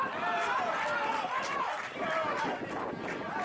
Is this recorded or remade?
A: recorded